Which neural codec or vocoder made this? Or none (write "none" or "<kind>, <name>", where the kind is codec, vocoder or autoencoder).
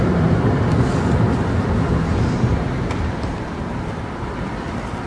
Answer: none